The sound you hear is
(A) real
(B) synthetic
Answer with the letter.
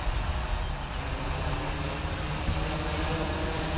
A